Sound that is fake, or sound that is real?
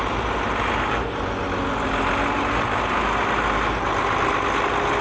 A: real